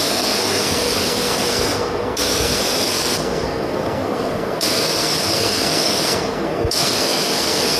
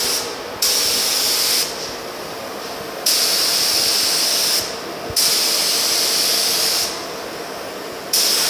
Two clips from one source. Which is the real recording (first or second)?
second